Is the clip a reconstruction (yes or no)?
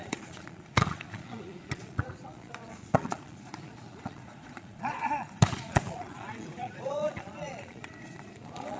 yes